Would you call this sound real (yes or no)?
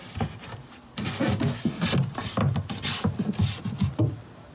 yes